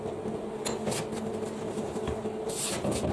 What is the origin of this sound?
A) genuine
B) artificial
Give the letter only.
A